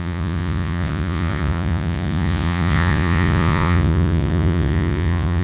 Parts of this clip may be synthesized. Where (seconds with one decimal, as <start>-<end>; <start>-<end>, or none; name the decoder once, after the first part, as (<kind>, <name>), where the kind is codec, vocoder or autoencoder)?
0.0-5.4 (vocoder, Vocos)